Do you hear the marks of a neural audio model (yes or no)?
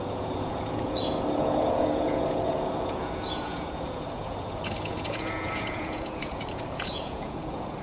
yes